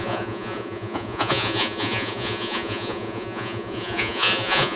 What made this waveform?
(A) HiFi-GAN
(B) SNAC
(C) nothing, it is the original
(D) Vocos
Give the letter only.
D